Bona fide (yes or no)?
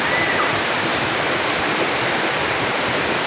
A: yes